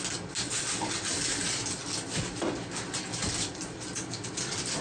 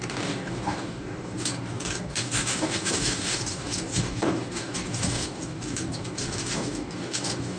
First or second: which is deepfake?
second